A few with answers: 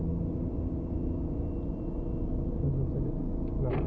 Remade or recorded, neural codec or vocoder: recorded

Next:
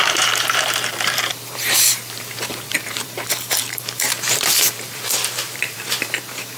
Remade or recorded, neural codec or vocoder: remade, vocoder, BigVGAN v2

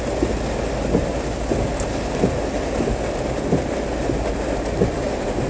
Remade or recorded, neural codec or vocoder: recorded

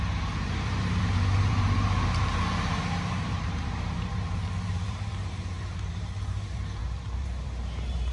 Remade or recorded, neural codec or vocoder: remade, vocoder, BigVGAN v2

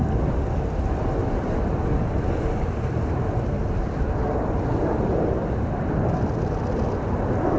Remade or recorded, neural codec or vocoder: recorded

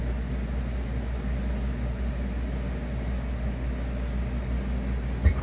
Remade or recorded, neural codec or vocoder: recorded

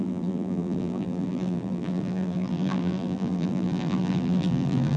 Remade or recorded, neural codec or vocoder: remade, vocoder, BigVGAN v2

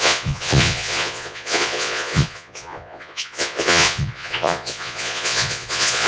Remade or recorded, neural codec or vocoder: remade, vocoder, Vocos